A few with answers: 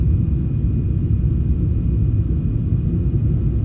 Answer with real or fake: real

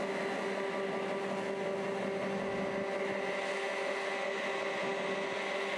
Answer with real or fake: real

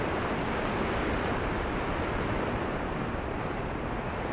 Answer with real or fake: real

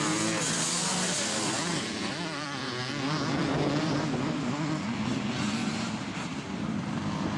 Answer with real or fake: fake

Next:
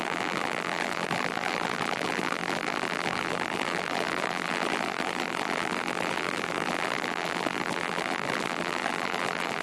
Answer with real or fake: fake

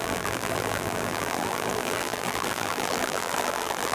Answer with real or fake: fake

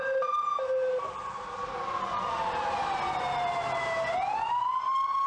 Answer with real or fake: real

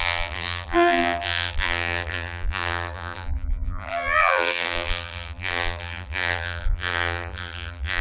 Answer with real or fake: fake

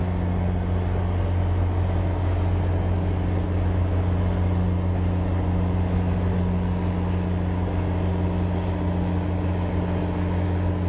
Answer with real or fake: real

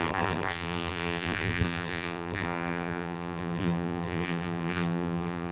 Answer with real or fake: fake